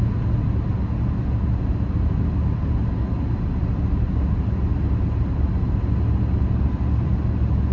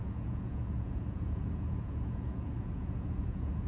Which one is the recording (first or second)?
first